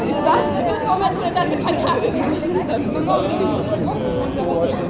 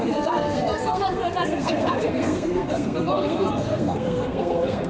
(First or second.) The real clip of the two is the first